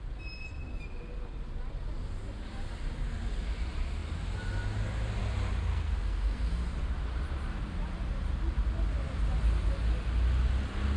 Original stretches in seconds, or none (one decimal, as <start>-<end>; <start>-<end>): 0.0-5.7; 6.6-11.0